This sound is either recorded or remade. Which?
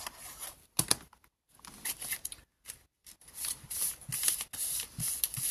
recorded